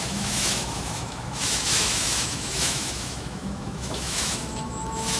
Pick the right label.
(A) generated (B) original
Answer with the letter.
A